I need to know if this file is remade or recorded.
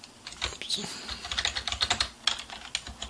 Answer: recorded